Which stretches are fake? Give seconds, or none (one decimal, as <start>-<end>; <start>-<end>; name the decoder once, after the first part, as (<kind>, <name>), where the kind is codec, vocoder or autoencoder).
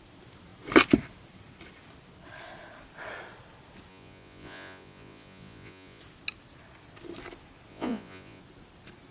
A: 3.9-6.0 (vocoder, Vocos); 7.7-8.4